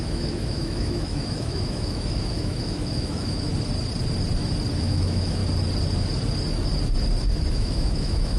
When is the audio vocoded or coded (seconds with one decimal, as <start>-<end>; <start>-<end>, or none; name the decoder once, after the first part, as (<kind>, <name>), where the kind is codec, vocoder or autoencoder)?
0.0-3.5 (autoencoder, DAC-VAE); 4.8-5.4; 7.5-8.4